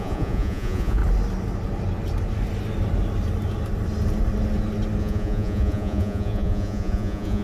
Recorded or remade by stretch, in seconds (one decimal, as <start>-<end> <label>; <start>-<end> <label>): 0.0-1.0 remade; 1.0-5.0 recorded; 5.0-7.4 remade

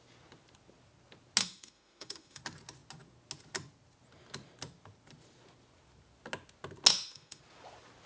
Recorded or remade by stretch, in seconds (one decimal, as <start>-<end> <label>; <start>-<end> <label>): 0.0-1.4 recorded; 1.4-2.4 remade; 2.4-6.9 recorded; 6.9-7.4 remade; 7.4-8.1 recorded